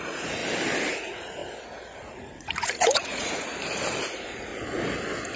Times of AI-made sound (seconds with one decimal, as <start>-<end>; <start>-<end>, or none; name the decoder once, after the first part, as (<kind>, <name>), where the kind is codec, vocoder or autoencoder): 0.0-0.4 (vocoder, Vocos); 0.9-1.4; 2.1-3.5; 4.1-4.5